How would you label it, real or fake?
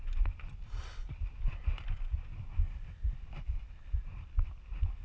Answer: real